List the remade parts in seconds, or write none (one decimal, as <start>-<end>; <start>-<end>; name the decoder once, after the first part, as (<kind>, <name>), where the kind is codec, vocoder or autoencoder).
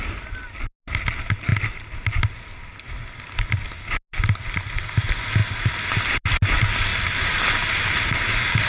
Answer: 5.4-5.9 (vocoder, BigVGAN v2); 6.9-8.7